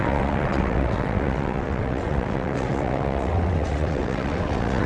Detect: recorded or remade remade